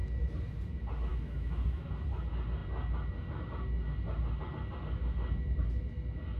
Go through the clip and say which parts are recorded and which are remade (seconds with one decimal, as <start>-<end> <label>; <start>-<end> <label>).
0.0-1.1 recorded; 1.1-1.9 remade; 1.9-6.4 recorded